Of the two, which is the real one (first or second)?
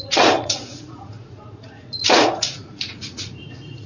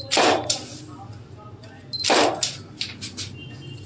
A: second